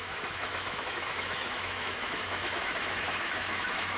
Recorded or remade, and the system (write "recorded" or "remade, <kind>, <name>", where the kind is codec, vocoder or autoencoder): remade, autoencoder, DAC-VAE